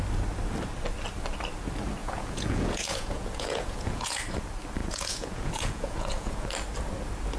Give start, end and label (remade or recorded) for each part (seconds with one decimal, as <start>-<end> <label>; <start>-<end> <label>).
0.0-2.0 recorded; 2.0-4.2 remade; 4.2-4.8 recorded; 4.8-6.5 remade; 6.5-7.4 recorded